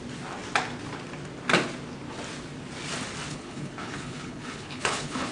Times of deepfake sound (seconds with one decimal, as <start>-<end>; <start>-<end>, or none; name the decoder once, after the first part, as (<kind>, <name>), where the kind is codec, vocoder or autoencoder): 3.3-5.3 (codec, HILCodec)